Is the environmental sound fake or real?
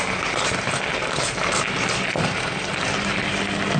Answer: real